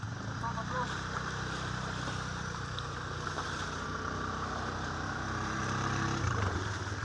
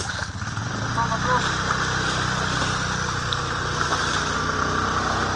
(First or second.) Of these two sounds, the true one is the second